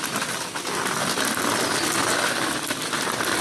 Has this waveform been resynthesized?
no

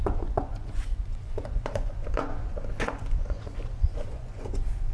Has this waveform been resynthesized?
yes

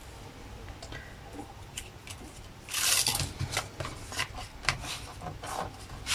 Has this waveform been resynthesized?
no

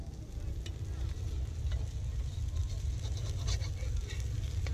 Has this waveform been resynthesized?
no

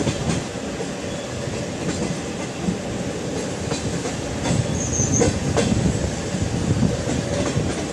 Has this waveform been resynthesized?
no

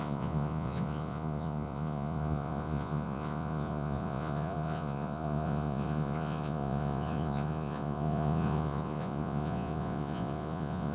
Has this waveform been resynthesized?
yes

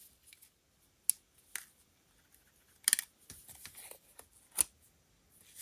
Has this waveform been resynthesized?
no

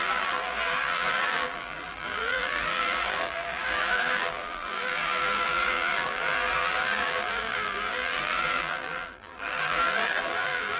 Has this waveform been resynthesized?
yes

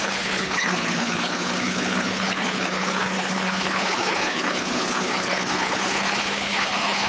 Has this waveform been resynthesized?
yes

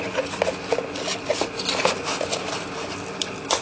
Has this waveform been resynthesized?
no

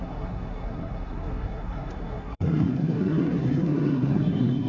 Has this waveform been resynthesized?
yes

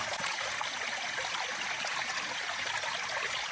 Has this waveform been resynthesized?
no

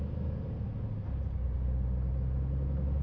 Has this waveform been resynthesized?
no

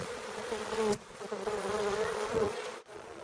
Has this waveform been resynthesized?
yes